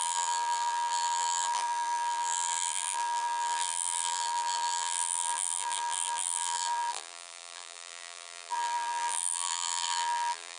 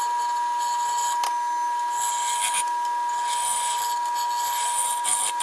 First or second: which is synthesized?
first